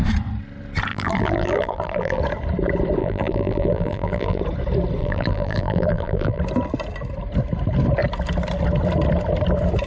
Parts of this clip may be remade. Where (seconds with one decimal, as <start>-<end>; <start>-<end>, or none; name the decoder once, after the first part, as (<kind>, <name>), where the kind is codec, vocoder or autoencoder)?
0.9-2.2 (vocoder, BigVGAN v2); 3.0-4.4; 5.0-6.4